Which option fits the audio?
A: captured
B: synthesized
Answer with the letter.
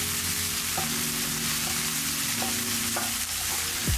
A